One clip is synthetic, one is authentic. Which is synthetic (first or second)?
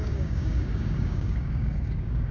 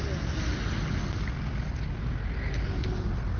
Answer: first